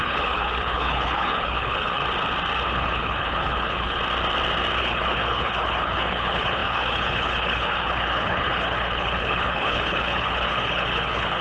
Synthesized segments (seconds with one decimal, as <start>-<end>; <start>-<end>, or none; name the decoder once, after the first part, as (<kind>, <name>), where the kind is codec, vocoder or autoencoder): 0.0-2.0 (codec, HILCodec); 2.6-4.0; 4.8-11.4